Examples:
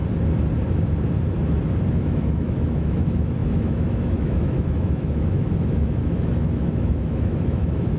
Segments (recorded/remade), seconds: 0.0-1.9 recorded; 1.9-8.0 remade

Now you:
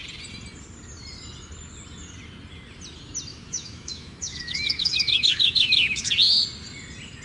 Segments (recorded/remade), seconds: 0.0-3.3 recorded; 3.3-6.1 remade; 6.1-7.2 recorded